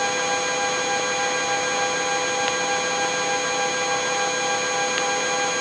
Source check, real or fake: real